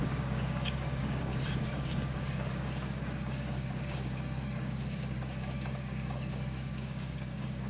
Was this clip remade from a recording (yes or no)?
yes